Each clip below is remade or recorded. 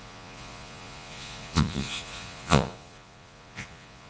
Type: remade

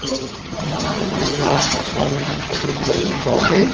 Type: remade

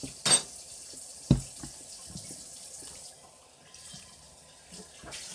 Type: recorded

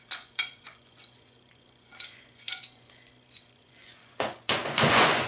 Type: remade